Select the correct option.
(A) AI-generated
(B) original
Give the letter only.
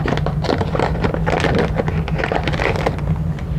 B